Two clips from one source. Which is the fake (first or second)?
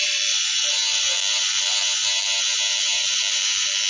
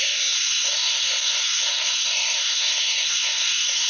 second